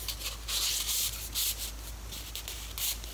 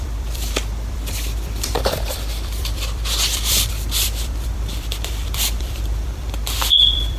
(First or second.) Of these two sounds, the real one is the first